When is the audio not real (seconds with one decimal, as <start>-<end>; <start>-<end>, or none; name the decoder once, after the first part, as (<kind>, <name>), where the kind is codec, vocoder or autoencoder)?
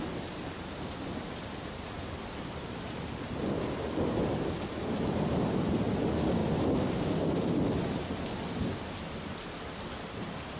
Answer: 0.0-6.4 (vocoder, BigVGAN v2); 8.6-10.6